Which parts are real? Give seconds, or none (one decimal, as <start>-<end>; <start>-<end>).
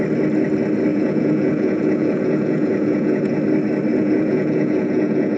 0.0-0.9; 3.4-3.9